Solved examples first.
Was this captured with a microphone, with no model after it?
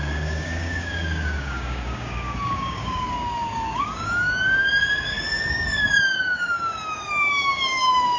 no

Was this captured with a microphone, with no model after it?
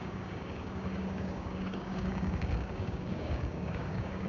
no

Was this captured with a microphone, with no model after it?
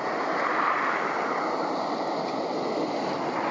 yes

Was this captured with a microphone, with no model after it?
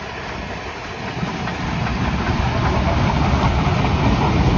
yes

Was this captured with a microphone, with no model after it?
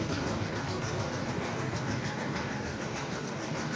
no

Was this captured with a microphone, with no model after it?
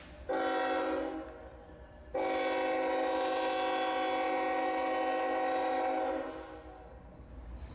yes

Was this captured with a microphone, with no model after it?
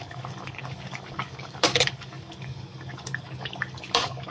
no